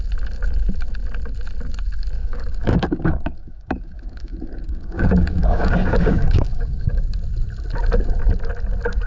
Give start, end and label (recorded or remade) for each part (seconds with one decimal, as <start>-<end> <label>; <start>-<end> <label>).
0.0-2.2 recorded; 2.2-7.0 remade; 7.0-9.1 recorded